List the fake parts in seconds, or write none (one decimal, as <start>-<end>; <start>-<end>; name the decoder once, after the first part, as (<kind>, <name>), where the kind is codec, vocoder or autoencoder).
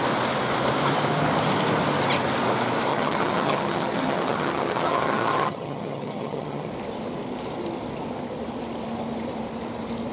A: 2.9-6.7 (vocoder, HiFi-GAN)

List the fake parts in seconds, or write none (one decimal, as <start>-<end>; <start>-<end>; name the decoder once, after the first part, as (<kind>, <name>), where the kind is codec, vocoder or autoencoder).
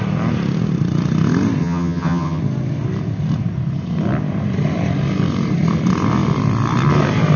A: 1.6-2.4 (vocoder, HiFi-GAN)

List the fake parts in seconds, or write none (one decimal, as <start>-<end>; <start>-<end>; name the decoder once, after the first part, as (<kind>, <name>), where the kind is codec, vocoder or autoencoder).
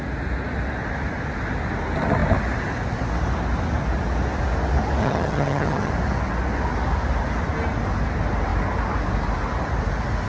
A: 5.0-5.9 (vocoder, HiFi-GAN)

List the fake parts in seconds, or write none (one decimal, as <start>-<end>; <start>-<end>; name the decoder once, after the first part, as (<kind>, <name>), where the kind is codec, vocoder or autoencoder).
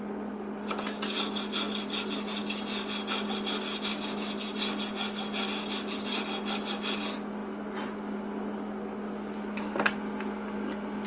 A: none